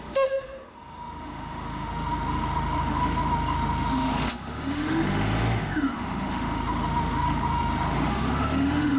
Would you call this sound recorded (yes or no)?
no